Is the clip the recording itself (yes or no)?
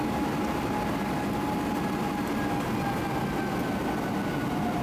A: yes